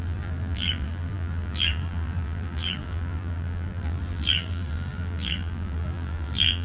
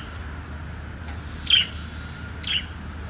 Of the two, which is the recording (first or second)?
second